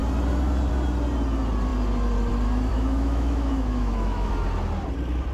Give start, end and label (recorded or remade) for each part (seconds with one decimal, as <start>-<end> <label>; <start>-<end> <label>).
0.0-2.7 recorded; 2.7-4.3 remade; 4.3-5.3 recorded